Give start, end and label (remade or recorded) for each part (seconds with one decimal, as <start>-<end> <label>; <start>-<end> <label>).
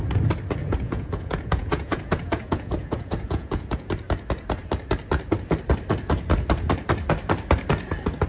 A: 0.0-0.6 recorded; 0.6-3.9 remade; 3.9-8.3 recorded